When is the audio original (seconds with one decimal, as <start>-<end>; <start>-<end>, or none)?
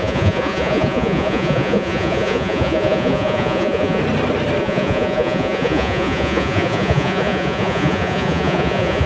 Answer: 4.0-4.6